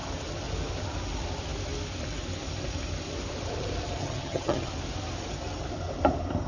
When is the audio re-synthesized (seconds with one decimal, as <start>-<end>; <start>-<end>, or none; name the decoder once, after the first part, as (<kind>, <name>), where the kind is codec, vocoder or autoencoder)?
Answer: 4.0-4.7 (vocoder, HiFi-GAN)